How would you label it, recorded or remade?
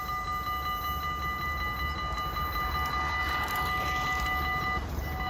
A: recorded